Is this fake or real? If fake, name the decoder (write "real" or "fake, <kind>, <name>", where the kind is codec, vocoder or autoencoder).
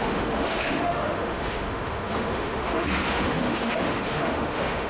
fake, autoencoder, DAC-VAE